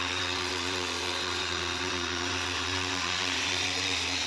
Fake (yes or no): yes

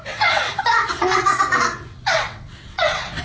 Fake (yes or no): yes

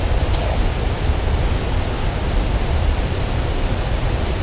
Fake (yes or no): no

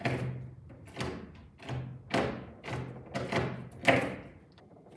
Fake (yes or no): no